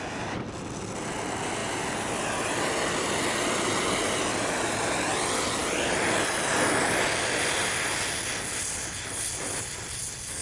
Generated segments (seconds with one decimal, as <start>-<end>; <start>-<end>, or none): none

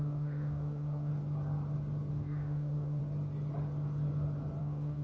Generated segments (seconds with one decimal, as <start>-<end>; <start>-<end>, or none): 0.0-1.1; 2.1-3.0; 4.6-5.0

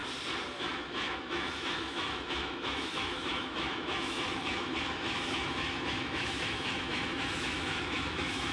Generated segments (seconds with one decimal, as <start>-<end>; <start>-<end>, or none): 0.6-8.5

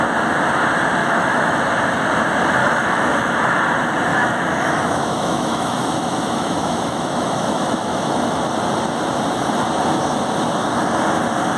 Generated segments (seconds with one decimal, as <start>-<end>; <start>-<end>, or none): 1.0-1.6; 2.6-3.6; 4.1-8.4

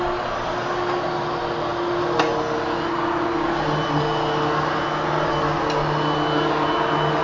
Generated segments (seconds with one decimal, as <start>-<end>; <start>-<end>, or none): none

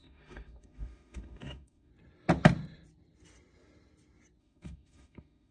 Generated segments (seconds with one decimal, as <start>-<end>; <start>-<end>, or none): 0.0-1.9; 4.4-5.5